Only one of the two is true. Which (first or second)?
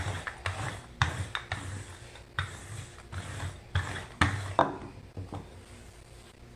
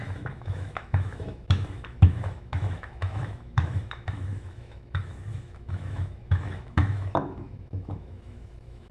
first